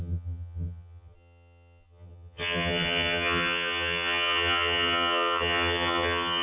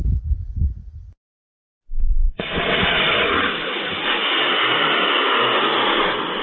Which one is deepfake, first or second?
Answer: first